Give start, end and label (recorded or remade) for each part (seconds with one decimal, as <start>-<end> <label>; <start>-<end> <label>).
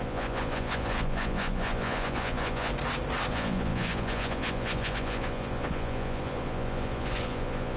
0.0-2.7 remade; 2.7-3.3 recorded; 3.3-7.8 remade